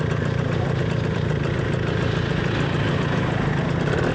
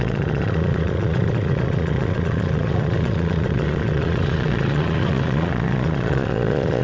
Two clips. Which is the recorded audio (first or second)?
first